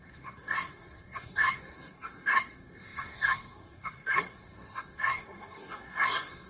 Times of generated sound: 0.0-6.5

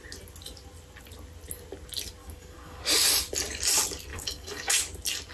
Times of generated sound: 2.2-2.8; 4.1-4.7